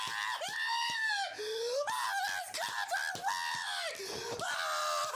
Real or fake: real